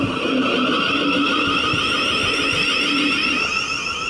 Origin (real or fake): real